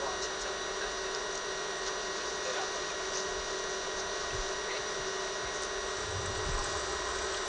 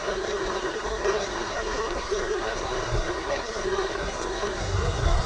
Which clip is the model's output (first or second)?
second